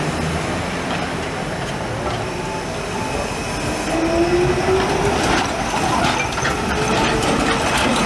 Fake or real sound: real